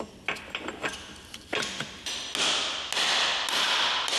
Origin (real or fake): real